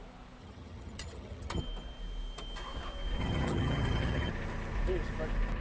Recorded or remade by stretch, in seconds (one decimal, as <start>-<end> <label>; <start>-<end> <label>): 0.0-0.4 recorded; 0.4-1.6 remade; 1.6-3.2 recorded; 3.2-4.3 remade; 4.3-5.6 recorded